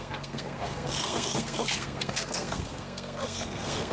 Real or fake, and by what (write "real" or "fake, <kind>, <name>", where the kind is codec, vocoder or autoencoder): fake, codec, SNAC